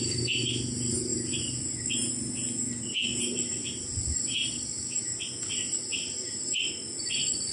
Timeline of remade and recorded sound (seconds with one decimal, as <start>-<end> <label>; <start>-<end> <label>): 0.0-1.1 recorded; 1.1-2.1 remade; 2.1-7.5 recorded